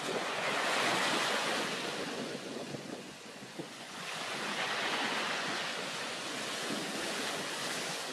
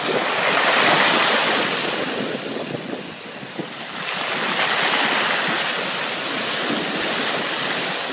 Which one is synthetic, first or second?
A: first